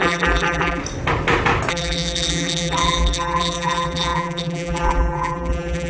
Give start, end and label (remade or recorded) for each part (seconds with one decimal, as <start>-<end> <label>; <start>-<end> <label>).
0.0-0.8 remade; 0.8-1.7 recorded; 1.7-5.9 remade